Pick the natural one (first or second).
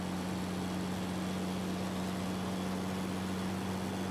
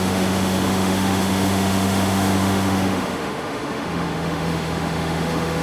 first